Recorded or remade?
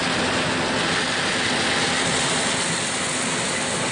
recorded